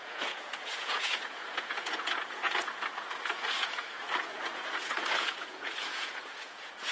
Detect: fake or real fake